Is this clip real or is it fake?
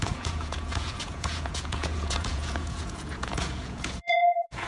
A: fake